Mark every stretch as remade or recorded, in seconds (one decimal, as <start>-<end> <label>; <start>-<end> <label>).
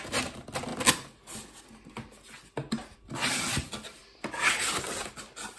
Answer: 0.0-5.6 recorded